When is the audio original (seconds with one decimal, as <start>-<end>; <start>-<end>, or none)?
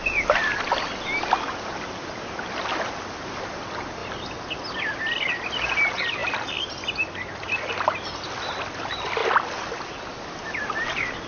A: 0.0-11.3